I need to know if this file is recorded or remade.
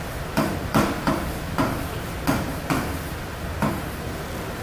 recorded